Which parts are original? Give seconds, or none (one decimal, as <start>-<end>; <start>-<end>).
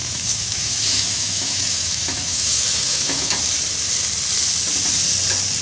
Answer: 3.4-5.6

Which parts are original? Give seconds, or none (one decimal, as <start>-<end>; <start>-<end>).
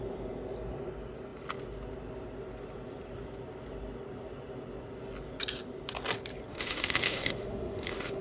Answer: 0.0-6.5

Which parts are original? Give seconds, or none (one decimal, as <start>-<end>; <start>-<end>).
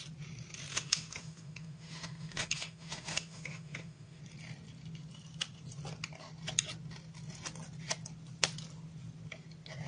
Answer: 0.0-0.7; 4.2-9.9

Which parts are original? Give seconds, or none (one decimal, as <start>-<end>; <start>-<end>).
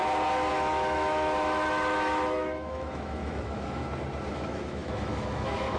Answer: 0.0-0.5; 3.8-4.3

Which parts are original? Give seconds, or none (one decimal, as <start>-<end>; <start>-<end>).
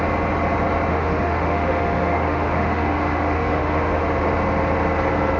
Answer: 0.0-0.9; 4.0-5.4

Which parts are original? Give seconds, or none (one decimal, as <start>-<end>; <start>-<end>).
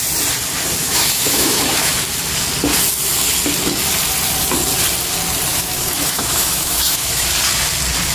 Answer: 0.0-0.8; 1.9-5.5; 7.3-8.1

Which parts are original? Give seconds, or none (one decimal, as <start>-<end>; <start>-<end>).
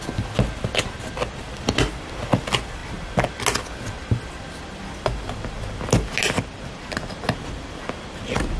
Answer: 0.0-8.6